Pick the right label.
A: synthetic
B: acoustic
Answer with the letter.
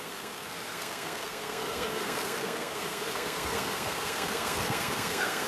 A